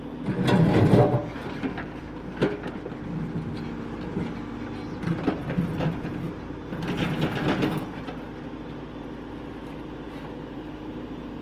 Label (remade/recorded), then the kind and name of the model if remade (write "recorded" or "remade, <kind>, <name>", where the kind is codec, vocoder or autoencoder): recorded